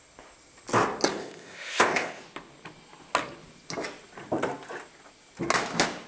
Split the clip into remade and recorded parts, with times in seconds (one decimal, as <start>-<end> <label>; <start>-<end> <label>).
0.0-1.2 recorded; 1.2-2.2 remade; 2.2-6.1 recorded

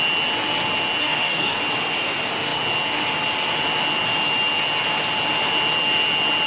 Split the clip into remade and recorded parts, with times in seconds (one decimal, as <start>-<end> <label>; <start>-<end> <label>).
0.0-1.0 recorded; 1.0-1.6 remade; 1.6-6.5 recorded

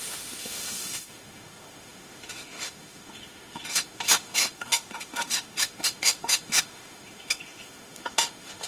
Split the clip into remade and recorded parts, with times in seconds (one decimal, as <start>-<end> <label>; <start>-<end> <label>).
0.0-8.7 remade